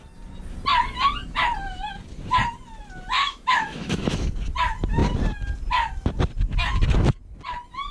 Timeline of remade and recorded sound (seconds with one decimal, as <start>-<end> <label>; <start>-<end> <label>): 0.0-3.2 recorded; 3.2-4.3 remade; 4.3-7.9 recorded